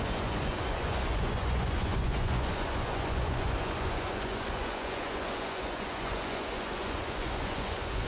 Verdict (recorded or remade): remade